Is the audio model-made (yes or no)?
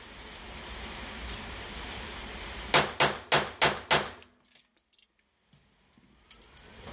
no